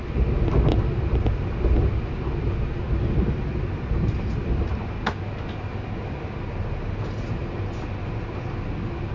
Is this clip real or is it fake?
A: real